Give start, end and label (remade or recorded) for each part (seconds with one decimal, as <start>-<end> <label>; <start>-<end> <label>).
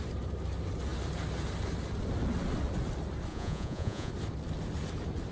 0.0-3.3 recorded; 3.3-4.1 remade; 4.1-5.3 recorded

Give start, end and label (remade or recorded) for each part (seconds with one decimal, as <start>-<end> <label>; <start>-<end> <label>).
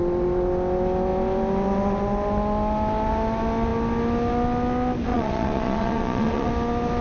0.0-5.1 recorded; 5.1-6.5 remade; 6.5-7.0 recorded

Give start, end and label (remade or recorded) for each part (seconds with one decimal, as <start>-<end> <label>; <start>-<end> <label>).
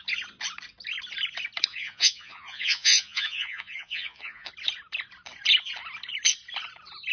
0.0-1.7 recorded; 1.7-4.5 remade; 4.5-7.1 recorded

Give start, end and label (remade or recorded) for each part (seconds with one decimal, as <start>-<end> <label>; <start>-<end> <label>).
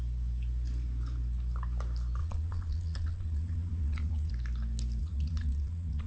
0.0-2.2 recorded; 2.2-4.3 remade; 4.3-5.0 recorded; 5.0-6.1 remade